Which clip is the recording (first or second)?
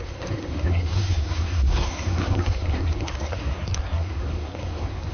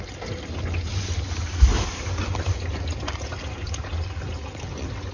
second